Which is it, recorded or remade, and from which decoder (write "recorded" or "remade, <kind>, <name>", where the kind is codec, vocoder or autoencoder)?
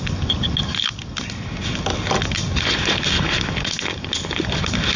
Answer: recorded